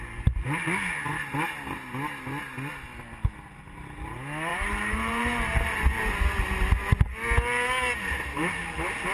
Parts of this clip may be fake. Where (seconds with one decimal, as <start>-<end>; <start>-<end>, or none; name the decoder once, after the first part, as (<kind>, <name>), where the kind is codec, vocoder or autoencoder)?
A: 4.5-6.0 (vocoder, BigVGAN v2)